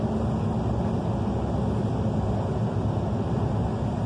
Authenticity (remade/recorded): recorded